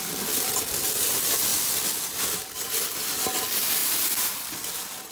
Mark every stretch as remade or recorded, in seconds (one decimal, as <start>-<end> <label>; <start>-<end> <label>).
0.0-5.1 recorded